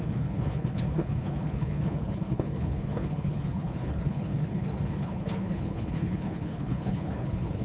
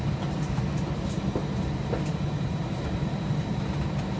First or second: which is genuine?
second